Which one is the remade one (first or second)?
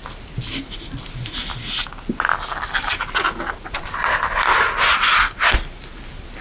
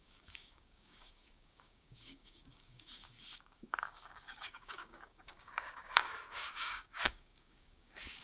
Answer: second